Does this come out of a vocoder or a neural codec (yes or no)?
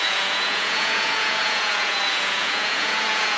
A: yes